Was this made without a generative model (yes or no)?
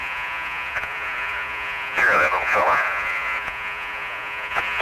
no